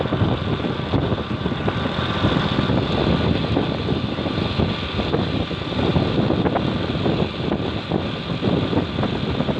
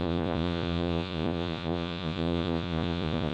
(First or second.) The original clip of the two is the first